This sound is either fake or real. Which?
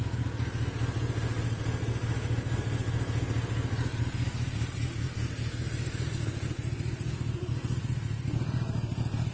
real